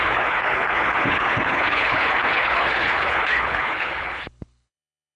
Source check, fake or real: fake